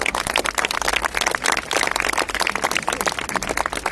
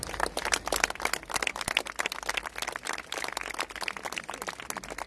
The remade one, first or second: first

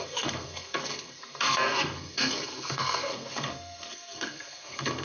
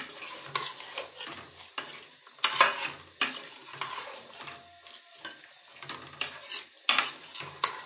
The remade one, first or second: first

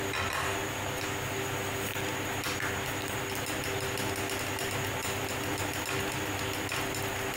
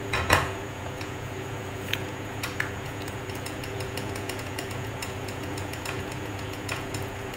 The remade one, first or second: second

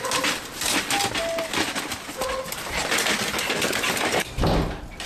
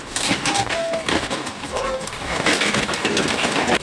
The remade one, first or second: second